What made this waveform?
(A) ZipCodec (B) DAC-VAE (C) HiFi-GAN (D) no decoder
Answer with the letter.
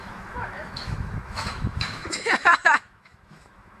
B